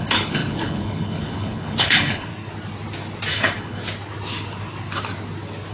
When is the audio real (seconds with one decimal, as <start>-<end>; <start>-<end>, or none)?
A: 2.3-3.3; 3.8-5.7